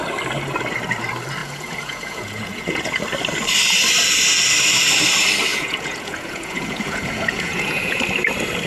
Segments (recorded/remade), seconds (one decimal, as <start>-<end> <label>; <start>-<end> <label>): 0.0-1.4 recorded; 1.4-3.0 remade; 3.0-5.5 recorded; 5.5-8.0 remade; 8.0-8.7 recorded